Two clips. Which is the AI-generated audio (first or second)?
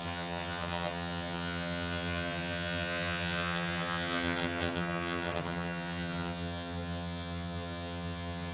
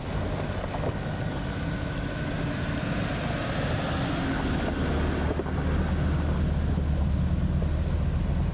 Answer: first